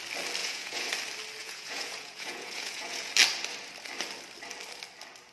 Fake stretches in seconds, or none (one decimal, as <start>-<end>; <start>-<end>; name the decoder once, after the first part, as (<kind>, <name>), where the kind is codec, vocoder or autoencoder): 0.4-0.9 (vocoder, Vocos); 1.4-3.1